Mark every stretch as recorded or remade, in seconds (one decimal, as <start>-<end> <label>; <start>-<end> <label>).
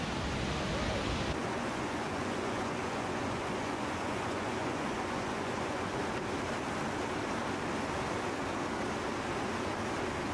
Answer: 0.0-1.4 recorded; 1.4-6.0 remade; 6.0-10.3 recorded